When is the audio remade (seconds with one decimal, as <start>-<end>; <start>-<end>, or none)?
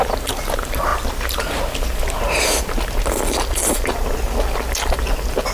none